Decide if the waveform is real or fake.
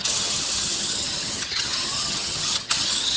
fake